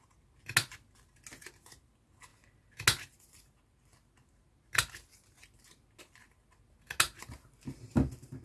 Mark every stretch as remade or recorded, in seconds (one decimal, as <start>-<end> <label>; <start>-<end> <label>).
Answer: 0.0-8.4 recorded